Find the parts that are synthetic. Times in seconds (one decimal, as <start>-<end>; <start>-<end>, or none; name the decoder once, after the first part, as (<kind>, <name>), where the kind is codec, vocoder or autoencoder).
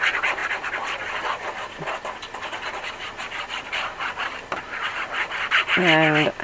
none